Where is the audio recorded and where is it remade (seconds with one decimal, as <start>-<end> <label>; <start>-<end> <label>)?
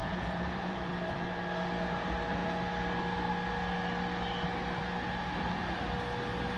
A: 0.0-0.9 remade; 0.9-6.6 recorded